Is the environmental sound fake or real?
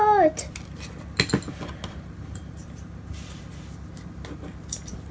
real